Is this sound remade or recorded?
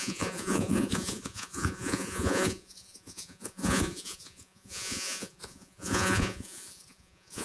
remade